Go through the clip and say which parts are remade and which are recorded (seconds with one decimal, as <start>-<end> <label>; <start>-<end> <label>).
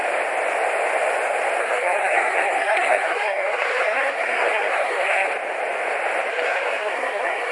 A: 0.0-1.6 recorded; 1.6-5.3 remade; 5.3-6.3 recorded; 6.3-7.5 remade